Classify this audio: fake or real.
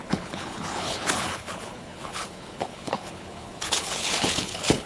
fake